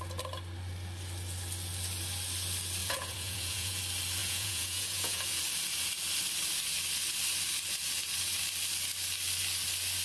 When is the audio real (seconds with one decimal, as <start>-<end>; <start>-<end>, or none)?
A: 0.0-2.8; 3.8-4.2; 5.4-10.0